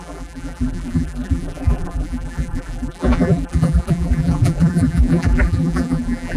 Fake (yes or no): yes